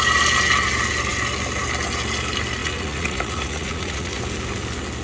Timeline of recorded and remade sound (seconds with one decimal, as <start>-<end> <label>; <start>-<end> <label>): 0.0-2.6 recorded; 2.6-4.2 remade; 4.2-5.0 recorded